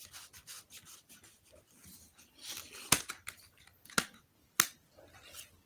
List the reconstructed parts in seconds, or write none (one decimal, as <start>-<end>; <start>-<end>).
none